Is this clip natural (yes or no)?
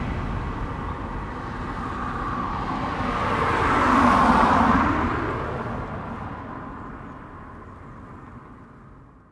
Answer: yes